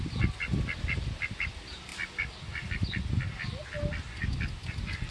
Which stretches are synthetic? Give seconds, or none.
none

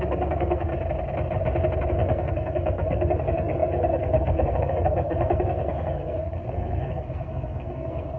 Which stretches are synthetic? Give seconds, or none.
0.0-0.7 (codec, SNAC); 1.9-8.2

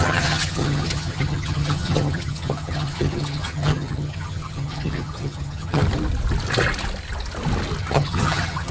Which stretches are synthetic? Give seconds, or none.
0.0-5.8 (vocoder, HiFi-GAN); 7.8-8.7